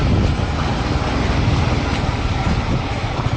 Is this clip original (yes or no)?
yes